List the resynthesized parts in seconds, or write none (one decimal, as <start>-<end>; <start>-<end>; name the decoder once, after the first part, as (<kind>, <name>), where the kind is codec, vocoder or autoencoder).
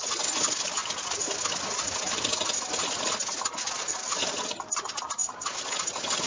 none